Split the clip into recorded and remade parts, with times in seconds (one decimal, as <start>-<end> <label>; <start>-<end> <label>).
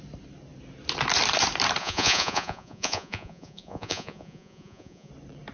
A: 0.0-1.8 recorded; 1.8-5.1 remade; 5.1-5.5 recorded